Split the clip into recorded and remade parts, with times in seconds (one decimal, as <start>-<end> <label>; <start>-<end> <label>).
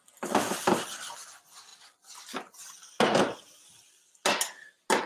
0.0-5.1 recorded